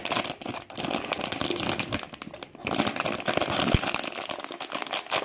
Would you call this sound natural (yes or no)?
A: yes